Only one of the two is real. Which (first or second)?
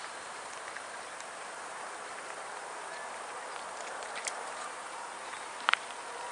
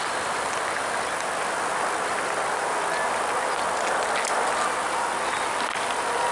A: second